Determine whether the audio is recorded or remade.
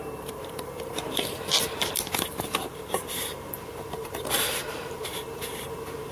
remade